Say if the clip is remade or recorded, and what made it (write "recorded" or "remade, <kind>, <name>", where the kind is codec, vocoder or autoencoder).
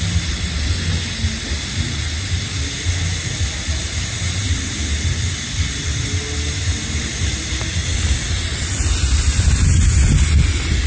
recorded